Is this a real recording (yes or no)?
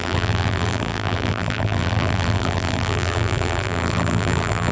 no